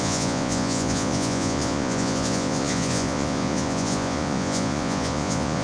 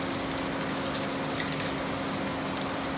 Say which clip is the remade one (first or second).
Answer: first